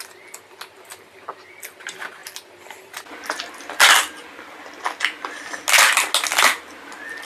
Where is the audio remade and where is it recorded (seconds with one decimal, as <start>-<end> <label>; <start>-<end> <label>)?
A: 0.0-7.3 recorded